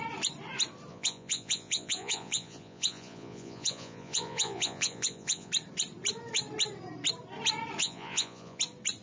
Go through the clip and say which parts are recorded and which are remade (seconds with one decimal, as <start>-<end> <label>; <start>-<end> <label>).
0.0-0.9 recorded; 0.9-5.5 remade; 5.5-7.8 recorded; 7.8-8.6 remade; 8.6-9.0 recorded